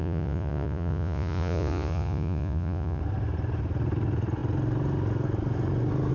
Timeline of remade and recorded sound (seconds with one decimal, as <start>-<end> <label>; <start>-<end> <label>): 0.0-3.0 remade; 3.0-6.1 recorded